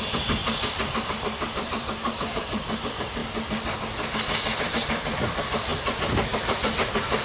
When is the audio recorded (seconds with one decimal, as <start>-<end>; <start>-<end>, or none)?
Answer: 0.4-1.1; 3.2-4.6; 5.7-6.4